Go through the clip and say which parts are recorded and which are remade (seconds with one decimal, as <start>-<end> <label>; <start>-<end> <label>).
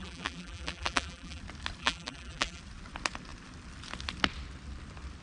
0.0-1.4 remade; 1.4-1.8 recorded; 1.8-2.6 remade; 2.6-5.2 recorded